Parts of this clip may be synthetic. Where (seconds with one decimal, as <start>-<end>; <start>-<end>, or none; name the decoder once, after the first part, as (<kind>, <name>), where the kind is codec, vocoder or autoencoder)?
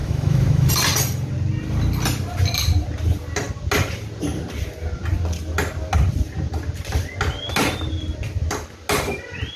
0.0-0.7 (autoencoder, DAC-VAE)